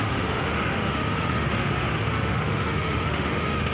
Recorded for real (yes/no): no